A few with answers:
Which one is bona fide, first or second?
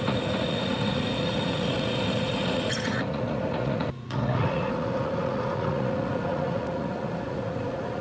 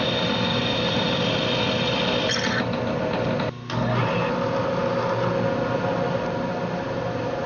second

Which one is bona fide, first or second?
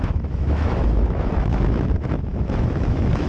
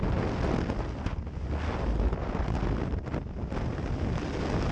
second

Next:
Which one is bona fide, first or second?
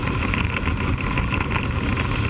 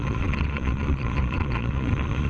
first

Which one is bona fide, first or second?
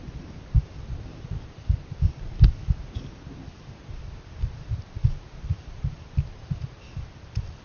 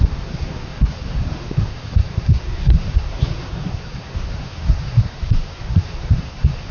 first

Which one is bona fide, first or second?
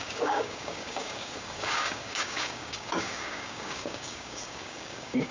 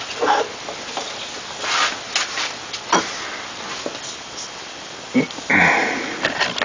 second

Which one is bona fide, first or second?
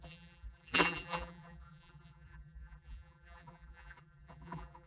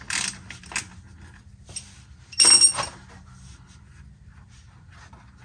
second